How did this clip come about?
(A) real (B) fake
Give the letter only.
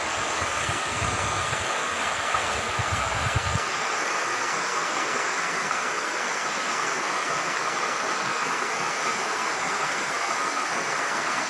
B